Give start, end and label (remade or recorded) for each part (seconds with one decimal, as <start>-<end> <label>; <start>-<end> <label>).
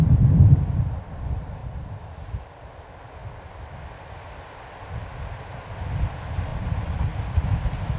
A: 0.0-1.6 recorded; 1.6-2.5 remade; 2.5-3.2 recorded; 3.2-3.8 remade; 3.8-6.5 recorded; 6.5-7.6 remade; 7.6-8.0 recorded